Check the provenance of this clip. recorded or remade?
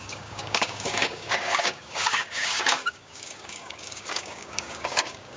remade